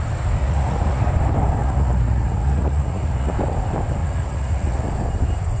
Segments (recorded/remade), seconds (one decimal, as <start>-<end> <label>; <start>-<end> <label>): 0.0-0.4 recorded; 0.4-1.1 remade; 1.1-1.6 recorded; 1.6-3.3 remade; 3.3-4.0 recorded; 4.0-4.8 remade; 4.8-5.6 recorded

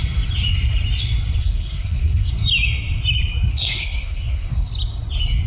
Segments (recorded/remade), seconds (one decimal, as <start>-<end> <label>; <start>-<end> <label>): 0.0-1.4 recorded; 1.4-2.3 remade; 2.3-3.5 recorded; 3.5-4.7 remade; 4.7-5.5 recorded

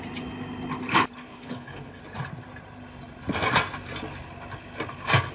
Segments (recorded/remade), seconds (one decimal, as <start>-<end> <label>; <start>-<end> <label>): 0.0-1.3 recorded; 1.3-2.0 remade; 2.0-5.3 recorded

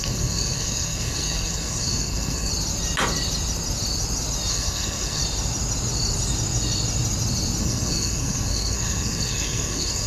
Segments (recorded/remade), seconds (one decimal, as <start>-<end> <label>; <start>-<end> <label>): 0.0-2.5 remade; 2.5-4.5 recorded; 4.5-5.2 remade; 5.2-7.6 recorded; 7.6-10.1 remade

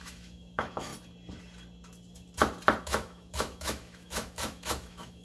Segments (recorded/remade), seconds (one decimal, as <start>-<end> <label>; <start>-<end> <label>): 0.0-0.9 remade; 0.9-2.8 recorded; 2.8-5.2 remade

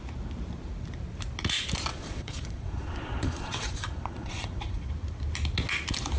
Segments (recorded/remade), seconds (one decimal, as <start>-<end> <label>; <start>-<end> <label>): 0.0-1.9 recorded; 1.9-4.9 remade; 4.9-6.2 recorded